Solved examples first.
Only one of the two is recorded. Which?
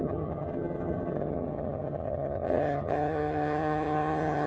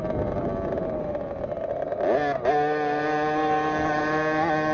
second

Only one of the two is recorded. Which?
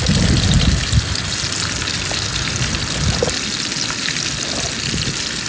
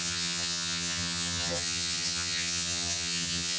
first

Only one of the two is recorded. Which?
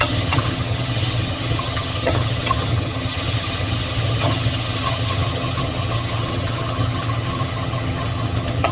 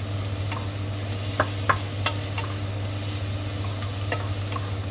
second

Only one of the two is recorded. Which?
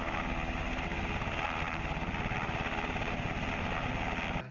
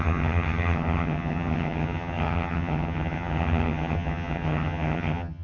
first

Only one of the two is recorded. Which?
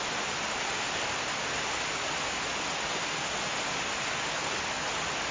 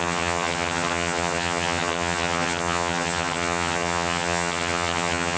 first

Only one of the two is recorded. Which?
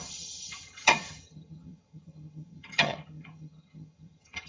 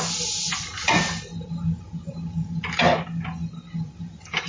second